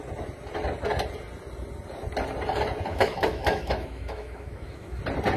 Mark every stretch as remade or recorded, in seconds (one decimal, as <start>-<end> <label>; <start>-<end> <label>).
0.0-2.9 recorded; 2.9-5.0 remade; 5.0-5.4 recorded